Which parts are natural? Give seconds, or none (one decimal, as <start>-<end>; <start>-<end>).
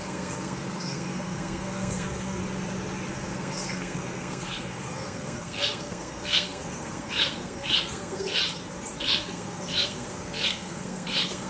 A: 2.4-3.1; 8.4-9.0